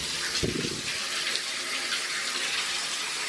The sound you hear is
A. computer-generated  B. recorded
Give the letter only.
B